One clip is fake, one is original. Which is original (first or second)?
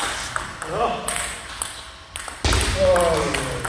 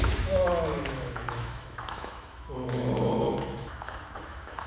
first